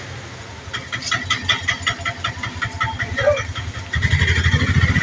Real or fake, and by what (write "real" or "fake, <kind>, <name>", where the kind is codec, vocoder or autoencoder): real